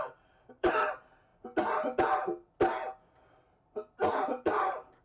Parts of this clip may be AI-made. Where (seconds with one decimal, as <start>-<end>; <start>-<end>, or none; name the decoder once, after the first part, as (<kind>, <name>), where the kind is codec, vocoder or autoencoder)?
0.0-1.3 (vocoder, BigVGAN v2); 4.1-5.0